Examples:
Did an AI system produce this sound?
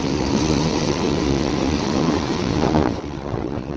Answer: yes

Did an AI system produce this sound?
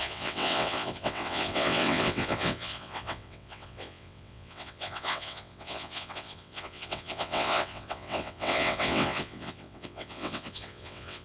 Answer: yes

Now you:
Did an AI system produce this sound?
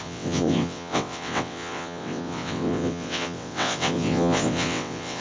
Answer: yes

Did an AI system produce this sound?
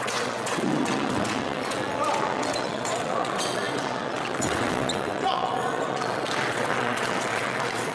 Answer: yes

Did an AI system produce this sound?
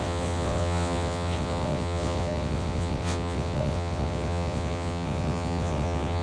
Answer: yes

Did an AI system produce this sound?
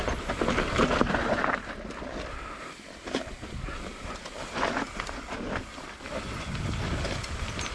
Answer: no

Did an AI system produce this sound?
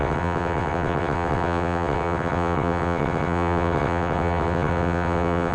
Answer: yes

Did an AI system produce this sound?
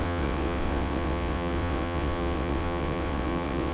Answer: yes